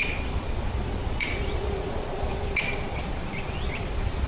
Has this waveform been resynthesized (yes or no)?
yes